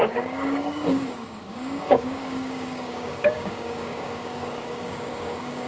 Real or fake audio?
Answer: fake